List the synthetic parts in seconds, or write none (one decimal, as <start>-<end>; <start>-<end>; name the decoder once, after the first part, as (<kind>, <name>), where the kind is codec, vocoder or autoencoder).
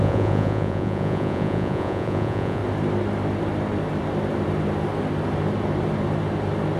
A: 0.0-2.6 (vocoder, Vocos)